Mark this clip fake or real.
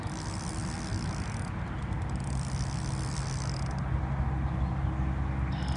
real